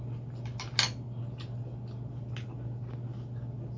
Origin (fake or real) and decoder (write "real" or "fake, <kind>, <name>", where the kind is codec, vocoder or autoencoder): real